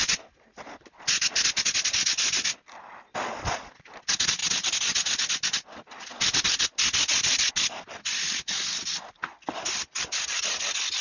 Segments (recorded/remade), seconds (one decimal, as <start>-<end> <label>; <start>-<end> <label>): 0.0-11.0 recorded

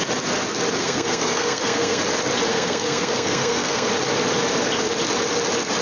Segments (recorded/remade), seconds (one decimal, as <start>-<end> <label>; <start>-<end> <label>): 0.0-0.8 recorded; 0.8-2.0 remade; 2.0-2.5 recorded; 2.5-3.9 remade; 3.9-5.8 recorded

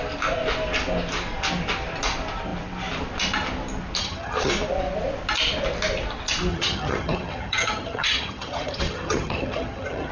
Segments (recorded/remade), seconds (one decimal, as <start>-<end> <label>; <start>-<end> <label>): 0.0-4.0 recorded; 4.0-4.5 remade; 4.5-6.5 recorded; 6.5-10.1 remade